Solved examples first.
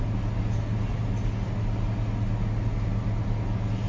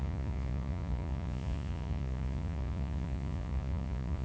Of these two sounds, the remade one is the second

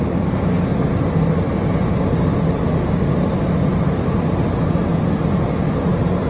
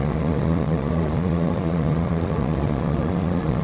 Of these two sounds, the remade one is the second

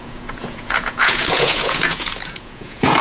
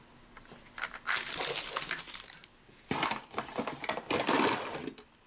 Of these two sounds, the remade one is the first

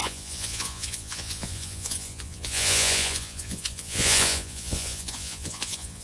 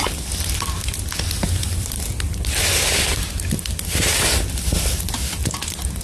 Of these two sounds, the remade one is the first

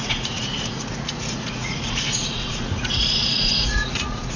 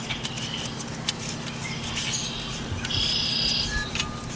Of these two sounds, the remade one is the first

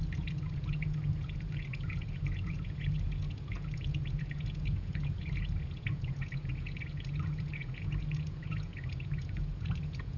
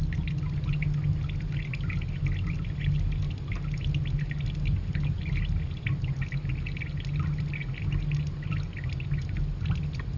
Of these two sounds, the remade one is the first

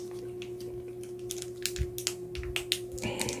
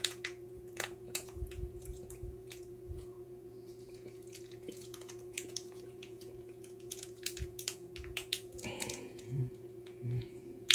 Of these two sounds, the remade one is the second